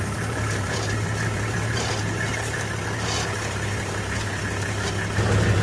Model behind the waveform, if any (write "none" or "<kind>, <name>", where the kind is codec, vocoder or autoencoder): vocoder, BigVGAN v2